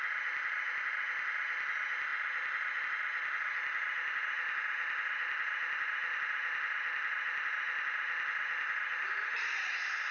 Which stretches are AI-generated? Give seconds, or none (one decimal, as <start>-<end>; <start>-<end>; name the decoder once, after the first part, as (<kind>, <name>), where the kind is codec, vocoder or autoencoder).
none

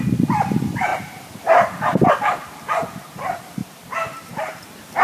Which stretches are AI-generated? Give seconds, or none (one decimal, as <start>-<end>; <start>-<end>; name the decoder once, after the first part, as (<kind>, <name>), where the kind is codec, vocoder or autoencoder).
0.9-2.1 (vocoder, BigVGAN v2); 3.6-4.6

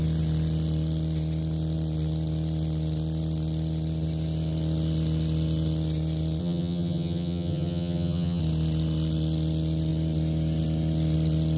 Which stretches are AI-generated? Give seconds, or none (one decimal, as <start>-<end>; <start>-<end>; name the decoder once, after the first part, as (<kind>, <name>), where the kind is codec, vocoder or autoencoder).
6.4-8.4 (vocoder, HiFi-GAN)

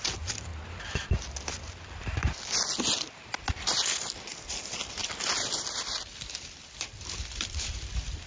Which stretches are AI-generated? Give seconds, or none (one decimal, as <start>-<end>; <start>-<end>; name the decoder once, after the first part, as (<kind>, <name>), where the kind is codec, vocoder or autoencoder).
0.0-0.5 (vocoder, BigVGAN v2); 3.5-8.3